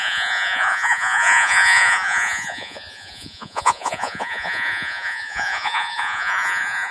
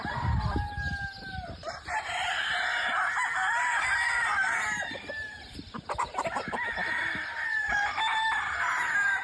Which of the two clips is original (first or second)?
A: second